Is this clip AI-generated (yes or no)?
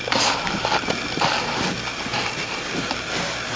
no